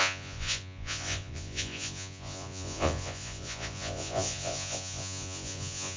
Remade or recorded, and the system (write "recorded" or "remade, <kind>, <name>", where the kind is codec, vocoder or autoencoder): remade, vocoder, Vocos